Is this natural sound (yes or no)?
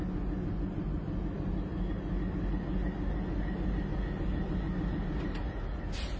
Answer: yes